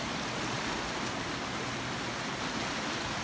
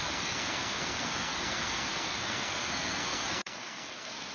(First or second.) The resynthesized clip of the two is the second